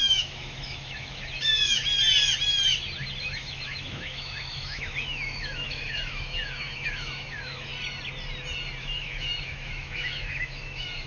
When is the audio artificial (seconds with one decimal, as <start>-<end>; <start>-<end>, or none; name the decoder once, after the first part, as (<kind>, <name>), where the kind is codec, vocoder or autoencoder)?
0.0-1.8 (autoencoder, DAC-VAE); 3.2-7.7; 8.8-11.1